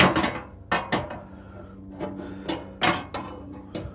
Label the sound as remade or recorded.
recorded